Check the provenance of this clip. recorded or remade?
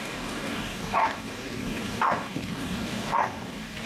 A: remade